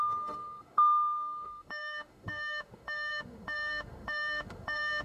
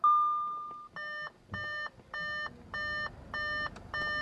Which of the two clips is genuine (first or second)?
second